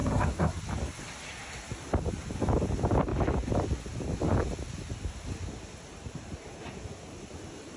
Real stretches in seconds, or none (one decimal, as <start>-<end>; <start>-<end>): 0.6-7.8